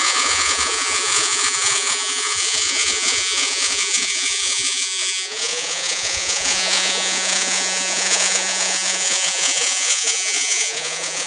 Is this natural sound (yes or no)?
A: no